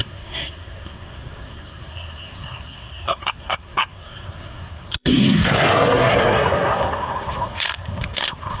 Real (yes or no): no